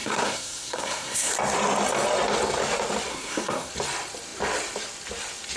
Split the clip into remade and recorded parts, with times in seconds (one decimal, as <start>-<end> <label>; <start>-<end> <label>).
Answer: 0.0-1.3 remade; 1.3-3.1 recorded; 3.1-3.7 remade; 3.7-5.6 recorded